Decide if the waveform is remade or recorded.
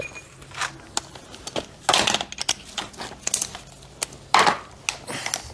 recorded